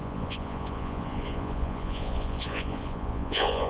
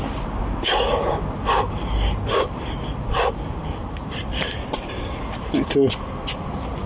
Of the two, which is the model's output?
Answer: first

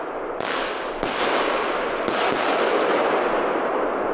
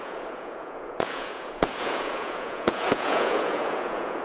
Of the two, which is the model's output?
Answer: second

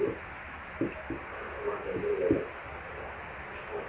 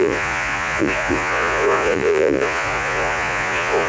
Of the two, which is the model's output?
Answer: second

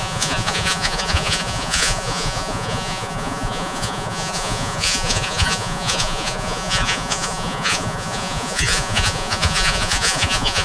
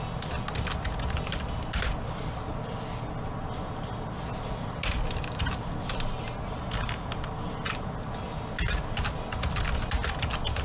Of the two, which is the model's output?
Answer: first